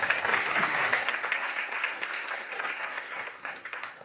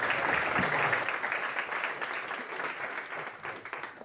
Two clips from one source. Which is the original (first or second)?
second